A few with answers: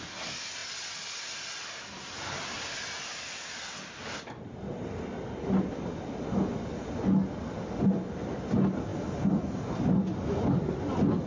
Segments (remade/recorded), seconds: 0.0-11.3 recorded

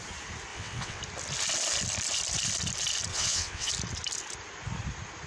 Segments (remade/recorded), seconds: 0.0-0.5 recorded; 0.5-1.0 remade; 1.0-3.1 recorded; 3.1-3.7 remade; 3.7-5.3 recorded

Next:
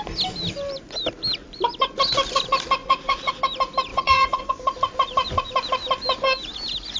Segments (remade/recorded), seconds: 0.0-2.8 recorded; 2.8-3.3 remade; 3.3-3.9 recorded; 3.9-4.4 remade; 4.4-7.0 recorded

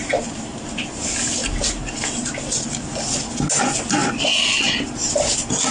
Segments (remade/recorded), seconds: 0.0-5.7 recorded

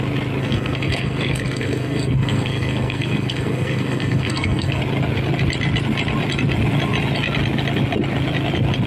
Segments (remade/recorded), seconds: 0.0-0.4 recorded; 0.4-4.8 remade; 4.8-8.9 recorded

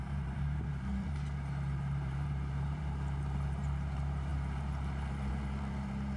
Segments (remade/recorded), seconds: 0.0-6.2 remade

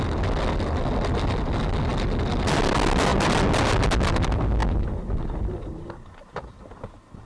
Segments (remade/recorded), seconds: 0.0-7.3 recorded

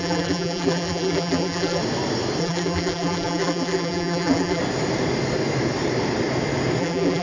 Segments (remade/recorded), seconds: 0.0-1.8 remade; 1.8-2.4 recorded; 2.4-4.6 remade; 4.6-6.8 recorded; 6.8-7.2 remade